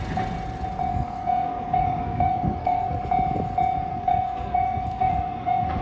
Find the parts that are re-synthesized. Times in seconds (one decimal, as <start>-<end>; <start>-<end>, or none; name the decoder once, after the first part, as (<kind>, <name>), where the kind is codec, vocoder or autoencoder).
0.9-3.0 (codec, SNAC); 3.9-5.8